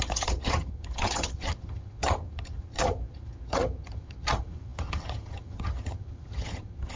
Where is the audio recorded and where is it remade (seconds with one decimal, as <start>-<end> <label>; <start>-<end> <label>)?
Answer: 0.0-7.0 remade